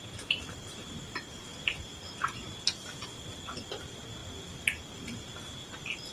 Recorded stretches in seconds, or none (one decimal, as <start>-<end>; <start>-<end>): 0.0-6.1